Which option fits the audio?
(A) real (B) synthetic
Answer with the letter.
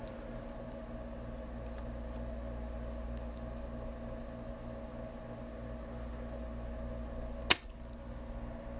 A